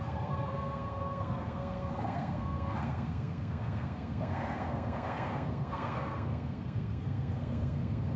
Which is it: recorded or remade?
remade